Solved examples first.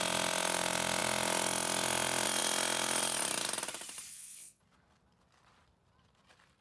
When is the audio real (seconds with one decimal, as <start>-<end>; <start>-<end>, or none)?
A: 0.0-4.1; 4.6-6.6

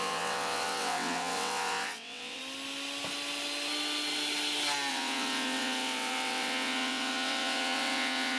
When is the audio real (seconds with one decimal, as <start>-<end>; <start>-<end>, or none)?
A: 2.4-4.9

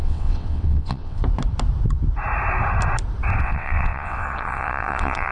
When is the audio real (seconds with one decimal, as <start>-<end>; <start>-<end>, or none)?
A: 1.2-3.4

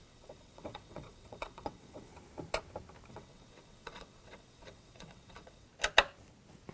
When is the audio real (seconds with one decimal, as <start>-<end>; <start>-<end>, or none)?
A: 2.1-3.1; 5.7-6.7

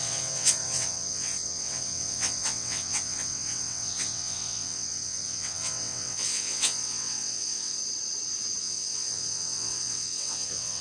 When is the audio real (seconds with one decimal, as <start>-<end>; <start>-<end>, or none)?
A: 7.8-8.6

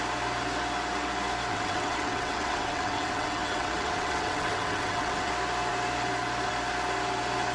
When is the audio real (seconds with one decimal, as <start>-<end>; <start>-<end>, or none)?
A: 0.0-1.5; 5.3-7.5

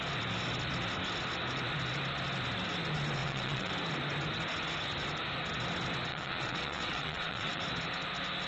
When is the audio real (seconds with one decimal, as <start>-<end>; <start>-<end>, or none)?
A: 0.0-3.2; 3.7-6.1; 7.6-8.5

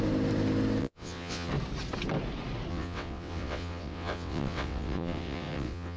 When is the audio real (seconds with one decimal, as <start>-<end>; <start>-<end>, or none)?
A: 0.0-0.8; 1.5-2.7